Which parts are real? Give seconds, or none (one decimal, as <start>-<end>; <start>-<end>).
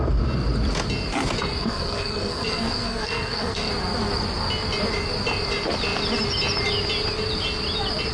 0.0-1.6; 3.7-8.1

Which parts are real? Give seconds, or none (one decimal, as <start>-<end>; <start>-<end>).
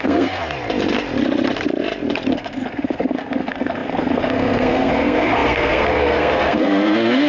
0.4-2.3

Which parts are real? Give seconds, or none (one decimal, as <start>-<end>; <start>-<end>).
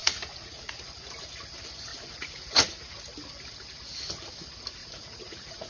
0.9-1.9; 3.0-4.8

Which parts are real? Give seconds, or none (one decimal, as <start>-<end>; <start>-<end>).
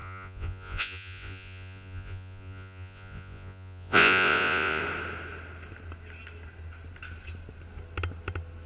4.8-8.7